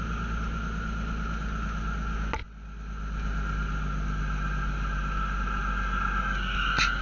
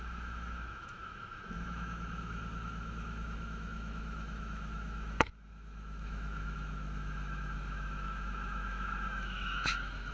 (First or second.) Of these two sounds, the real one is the first